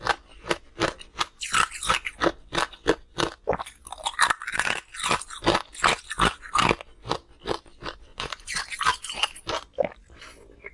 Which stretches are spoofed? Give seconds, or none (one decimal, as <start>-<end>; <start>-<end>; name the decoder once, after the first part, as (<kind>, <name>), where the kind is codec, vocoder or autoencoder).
8.1-8.6 (vocoder, Vocos)